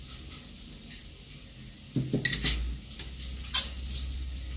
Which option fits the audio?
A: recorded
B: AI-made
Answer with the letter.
A